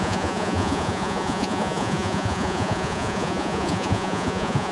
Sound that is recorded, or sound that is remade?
remade